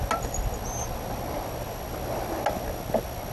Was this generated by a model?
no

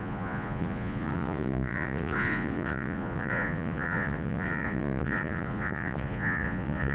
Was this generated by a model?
yes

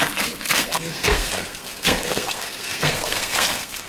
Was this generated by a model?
yes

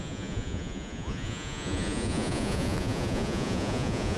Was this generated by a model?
yes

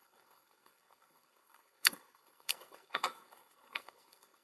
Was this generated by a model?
yes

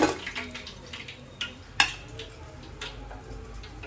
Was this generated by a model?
no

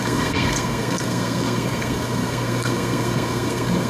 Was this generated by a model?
yes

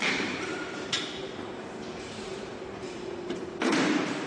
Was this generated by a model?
yes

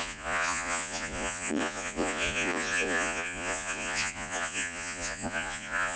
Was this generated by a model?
yes